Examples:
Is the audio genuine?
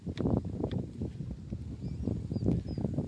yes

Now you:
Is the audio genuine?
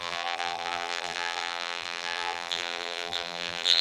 no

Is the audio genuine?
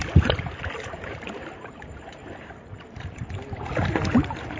no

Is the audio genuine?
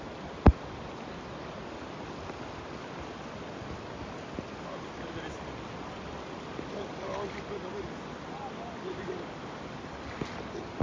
yes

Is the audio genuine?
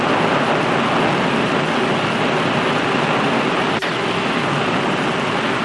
yes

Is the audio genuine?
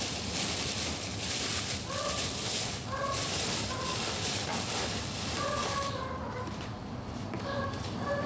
no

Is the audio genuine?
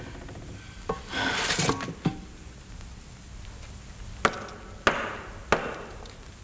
yes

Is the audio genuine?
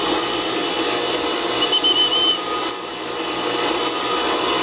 yes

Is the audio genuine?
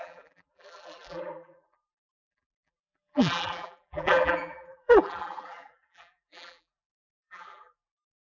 no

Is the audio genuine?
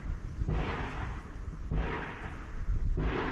yes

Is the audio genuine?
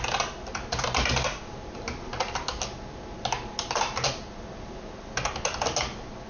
yes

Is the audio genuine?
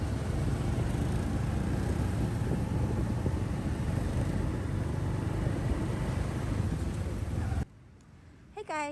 yes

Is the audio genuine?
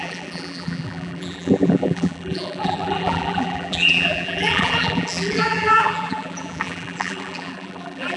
no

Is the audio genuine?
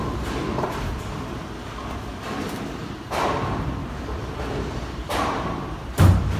no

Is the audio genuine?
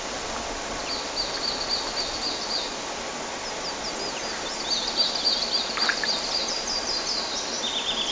yes